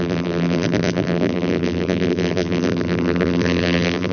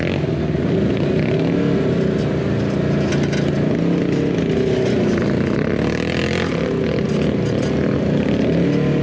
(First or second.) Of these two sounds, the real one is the second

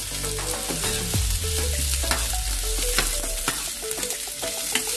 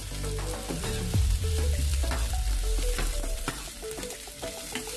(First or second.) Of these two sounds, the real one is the first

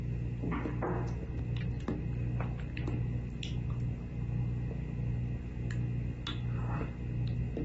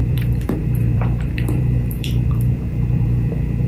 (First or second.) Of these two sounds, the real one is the first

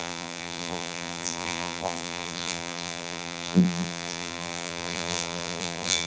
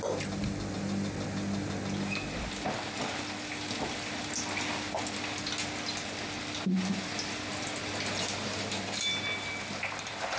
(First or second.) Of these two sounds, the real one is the second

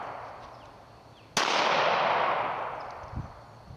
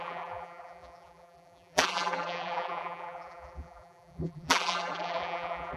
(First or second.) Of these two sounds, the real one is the first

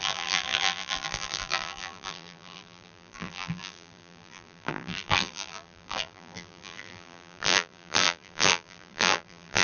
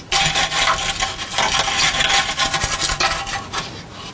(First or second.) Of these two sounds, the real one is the second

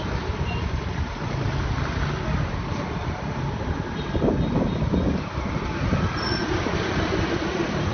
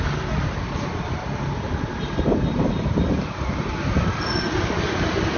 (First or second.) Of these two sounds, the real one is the second